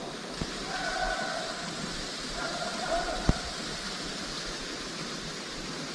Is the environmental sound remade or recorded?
recorded